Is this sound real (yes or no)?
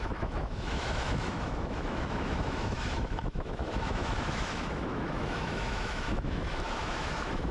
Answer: no